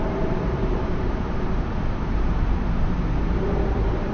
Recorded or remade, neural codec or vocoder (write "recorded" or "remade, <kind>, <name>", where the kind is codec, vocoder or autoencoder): remade, vocoder, BigVGAN v2